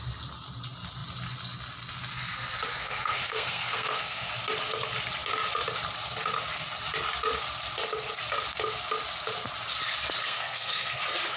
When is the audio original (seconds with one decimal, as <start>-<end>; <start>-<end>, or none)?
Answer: 0.0-2.8; 4.3-10.2; 11.0-11.4